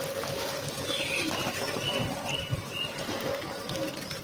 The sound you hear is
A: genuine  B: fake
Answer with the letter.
A